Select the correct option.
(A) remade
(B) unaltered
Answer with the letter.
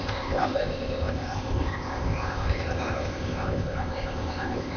A